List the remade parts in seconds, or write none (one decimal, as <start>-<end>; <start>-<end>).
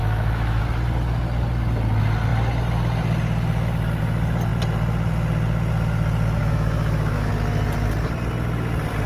0.0-0.6; 6.4-7.3